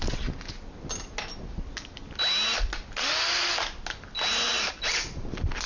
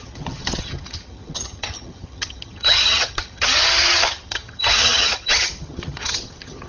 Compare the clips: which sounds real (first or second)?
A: first